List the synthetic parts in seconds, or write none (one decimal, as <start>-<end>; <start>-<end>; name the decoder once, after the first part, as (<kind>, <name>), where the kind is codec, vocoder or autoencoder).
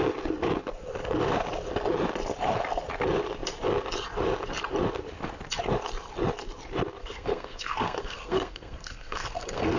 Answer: 7.0-9.8 (codec, SNAC)